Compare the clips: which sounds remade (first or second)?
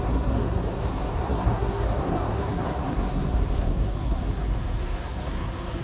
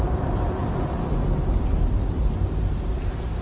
first